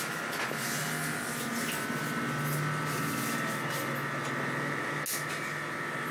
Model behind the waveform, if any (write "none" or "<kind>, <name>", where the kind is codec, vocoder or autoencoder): none